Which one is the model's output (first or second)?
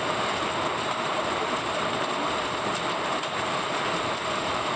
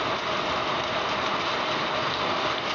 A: first